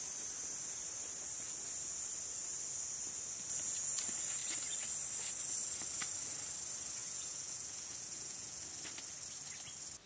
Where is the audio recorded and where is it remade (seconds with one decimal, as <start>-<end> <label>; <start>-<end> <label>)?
0.0-7.0 recorded; 7.0-8.7 remade; 8.7-10.1 recorded